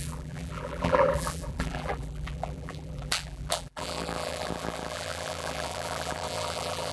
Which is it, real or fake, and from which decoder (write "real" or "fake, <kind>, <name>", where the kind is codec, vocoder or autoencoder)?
fake, vocoder, BigVGAN v2